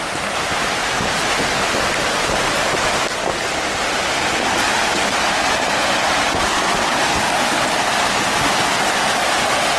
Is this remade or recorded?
recorded